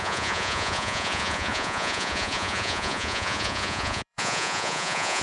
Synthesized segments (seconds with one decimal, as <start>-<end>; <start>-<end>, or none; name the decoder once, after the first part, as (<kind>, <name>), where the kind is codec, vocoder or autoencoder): 0.0-5.2 (vocoder, Vocos)